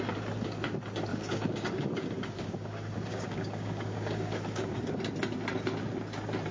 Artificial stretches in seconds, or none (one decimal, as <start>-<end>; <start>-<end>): 1.1-5.0